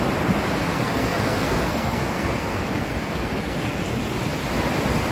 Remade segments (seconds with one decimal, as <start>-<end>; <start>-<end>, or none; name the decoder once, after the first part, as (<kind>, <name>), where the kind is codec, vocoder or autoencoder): 0.7-3.8 (codec, SNAC)